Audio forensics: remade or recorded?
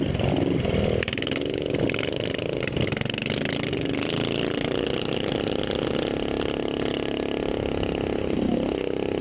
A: recorded